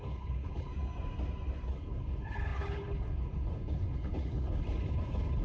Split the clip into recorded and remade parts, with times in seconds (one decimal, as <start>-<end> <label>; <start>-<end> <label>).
0.0-0.7 remade; 0.7-1.7 recorded; 1.7-5.4 remade